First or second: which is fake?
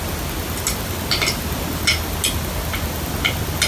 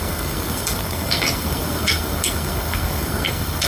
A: second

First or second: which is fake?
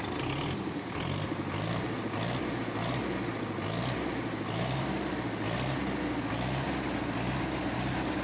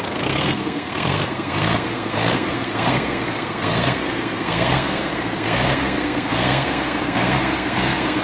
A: second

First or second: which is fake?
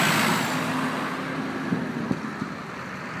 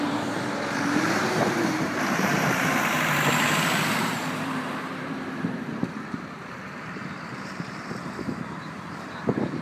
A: second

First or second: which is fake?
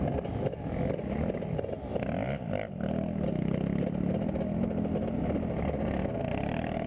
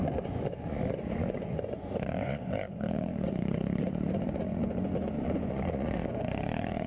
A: second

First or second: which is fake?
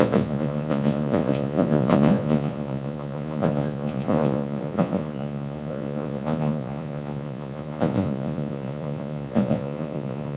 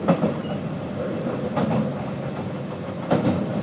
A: first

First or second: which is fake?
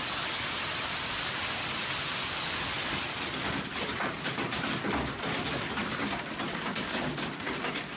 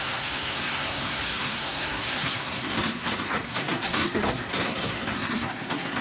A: second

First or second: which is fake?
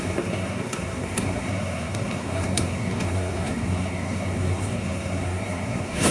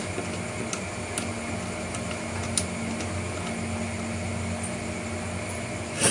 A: first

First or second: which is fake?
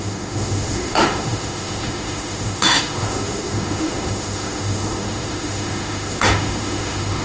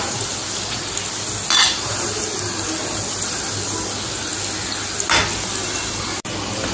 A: first